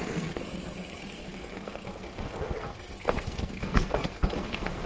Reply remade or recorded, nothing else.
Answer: remade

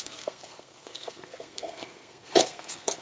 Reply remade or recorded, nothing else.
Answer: remade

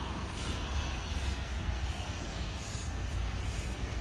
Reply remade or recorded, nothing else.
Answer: remade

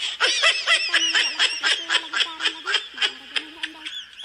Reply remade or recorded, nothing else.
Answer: recorded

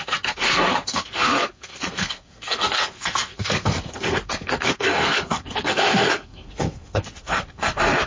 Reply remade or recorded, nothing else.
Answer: remade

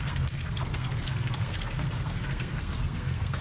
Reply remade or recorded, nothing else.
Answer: remade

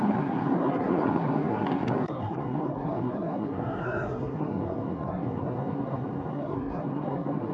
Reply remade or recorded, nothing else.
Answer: remade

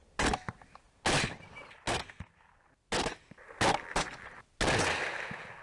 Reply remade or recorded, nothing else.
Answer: recorded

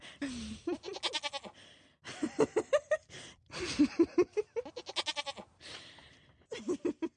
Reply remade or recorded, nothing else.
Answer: recorded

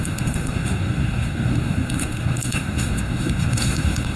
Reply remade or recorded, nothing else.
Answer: remade